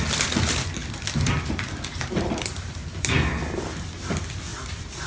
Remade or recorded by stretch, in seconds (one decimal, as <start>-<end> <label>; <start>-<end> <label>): 0.0-0.8 recorded; 0.8-3.9 remade; 3.9-4.5 recorded; 4.5-5.1 remade